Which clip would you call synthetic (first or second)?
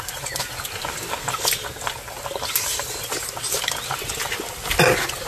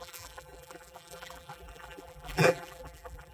second